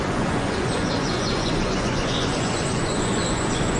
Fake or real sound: fake